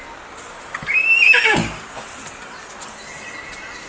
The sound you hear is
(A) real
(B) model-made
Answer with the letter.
A